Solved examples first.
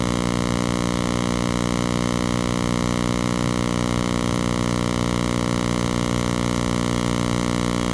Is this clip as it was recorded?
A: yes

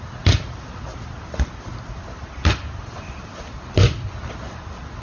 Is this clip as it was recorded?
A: yes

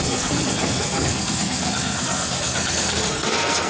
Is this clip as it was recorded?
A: no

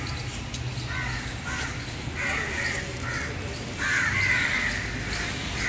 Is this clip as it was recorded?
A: yes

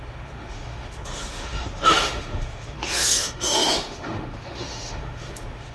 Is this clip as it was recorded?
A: no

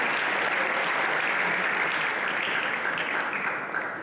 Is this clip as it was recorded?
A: yes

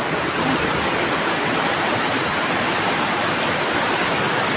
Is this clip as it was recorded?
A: yes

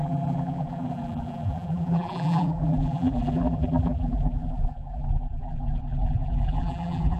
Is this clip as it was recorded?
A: no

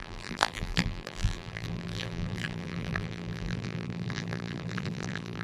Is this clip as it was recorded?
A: no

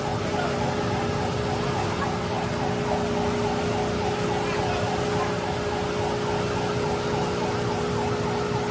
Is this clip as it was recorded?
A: yes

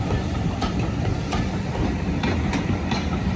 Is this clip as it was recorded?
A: yes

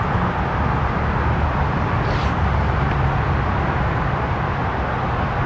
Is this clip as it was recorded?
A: yes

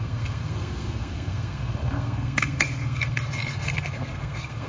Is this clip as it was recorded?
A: no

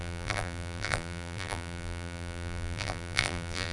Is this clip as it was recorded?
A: no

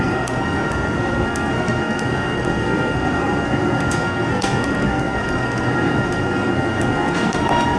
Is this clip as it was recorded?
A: no